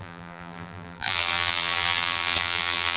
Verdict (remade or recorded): remade